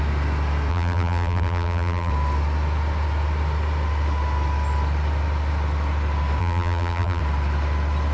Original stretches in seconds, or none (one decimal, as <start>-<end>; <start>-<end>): 0.0-0.7; 2.1-6.4; 7.2-8.1